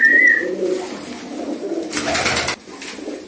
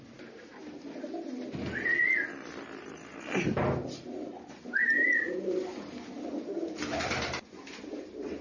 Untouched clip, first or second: first